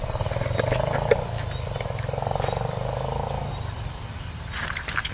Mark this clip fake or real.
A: real